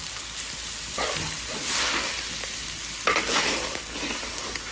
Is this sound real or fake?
real